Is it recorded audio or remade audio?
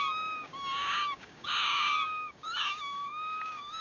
remade